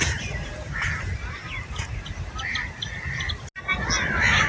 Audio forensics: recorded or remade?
recorded